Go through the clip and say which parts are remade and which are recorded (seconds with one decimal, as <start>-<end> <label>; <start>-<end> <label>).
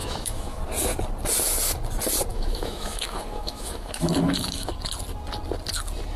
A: 0.0-0.6 remade; 0.6-2.3 recorded; 2.3-4.7 remade; 4.7-6.2 recorded